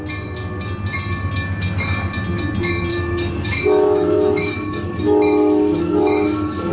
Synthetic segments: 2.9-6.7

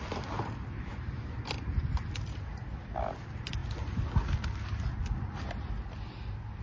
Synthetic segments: none

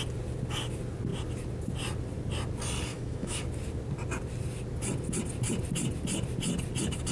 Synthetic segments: 2.9-3.4

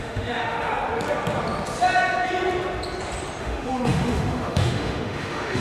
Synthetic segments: 0.0-0.7; 3.4-5.6

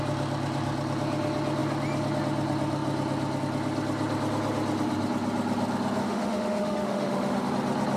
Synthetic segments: 6.0-7.5